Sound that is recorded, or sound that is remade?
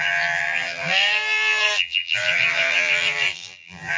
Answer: remade